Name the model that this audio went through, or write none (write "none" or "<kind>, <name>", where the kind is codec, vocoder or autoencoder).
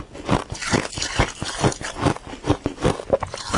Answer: none